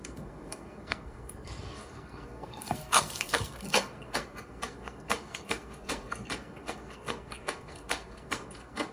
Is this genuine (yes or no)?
no